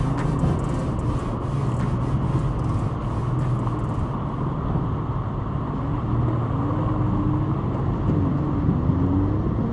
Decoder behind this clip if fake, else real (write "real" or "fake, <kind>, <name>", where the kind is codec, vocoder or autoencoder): real